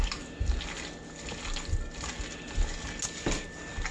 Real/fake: real